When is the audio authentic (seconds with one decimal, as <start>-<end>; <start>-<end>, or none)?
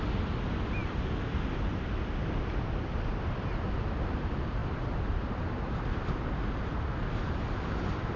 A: 0.0-4.6; 6.1-8.2